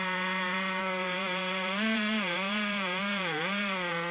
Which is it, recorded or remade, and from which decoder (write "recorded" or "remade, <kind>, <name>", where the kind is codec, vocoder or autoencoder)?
remade, vocoder, BigVGAN v2